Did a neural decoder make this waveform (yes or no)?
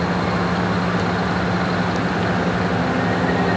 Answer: no